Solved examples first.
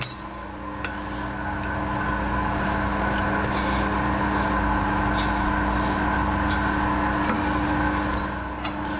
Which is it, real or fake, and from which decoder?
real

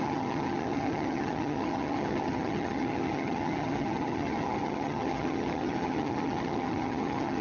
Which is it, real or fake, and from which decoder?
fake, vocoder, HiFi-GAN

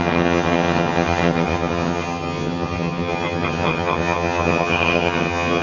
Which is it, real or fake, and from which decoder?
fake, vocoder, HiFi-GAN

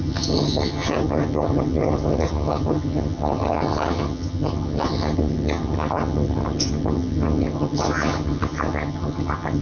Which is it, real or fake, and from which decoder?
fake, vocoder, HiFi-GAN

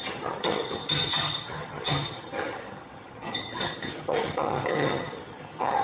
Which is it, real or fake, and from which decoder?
fake, vocoder, HiFi-GAN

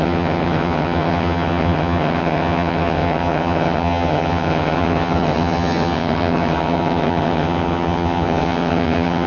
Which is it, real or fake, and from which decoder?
fake, vocoder, HiFi-GAN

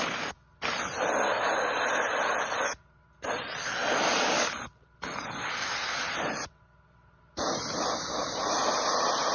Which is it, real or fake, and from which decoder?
real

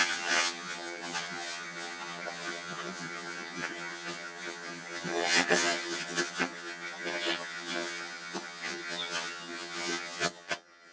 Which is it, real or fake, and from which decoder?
fake, vocoder, HiFi-GAN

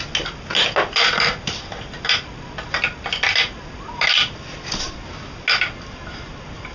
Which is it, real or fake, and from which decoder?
real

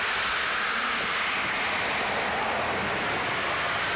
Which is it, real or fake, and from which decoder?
real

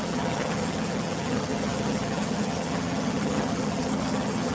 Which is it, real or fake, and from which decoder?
fake, vocoder, HiFi-GAN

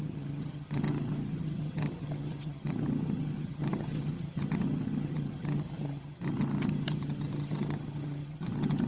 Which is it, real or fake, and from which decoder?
fake, vocoder, HiFi-GAN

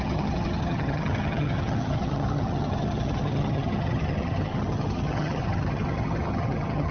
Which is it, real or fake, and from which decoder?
fake, vocoder, HiFi-GAN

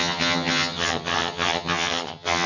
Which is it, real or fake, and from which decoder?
fake, vocoder, HiFi-GAN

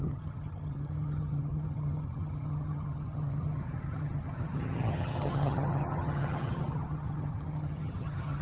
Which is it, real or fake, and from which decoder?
fake, vocoder, HiFi-GAN